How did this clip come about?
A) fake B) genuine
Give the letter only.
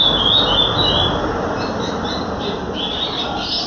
B